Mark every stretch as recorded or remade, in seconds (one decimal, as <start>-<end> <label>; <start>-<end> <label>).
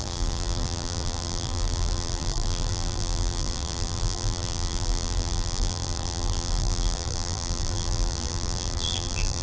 0.0-9.4 remade